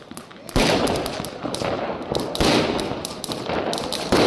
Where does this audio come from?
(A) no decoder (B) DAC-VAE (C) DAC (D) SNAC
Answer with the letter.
A